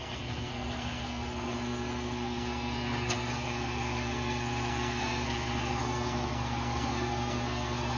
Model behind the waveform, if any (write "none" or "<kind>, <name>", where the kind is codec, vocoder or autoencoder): codec, SNAC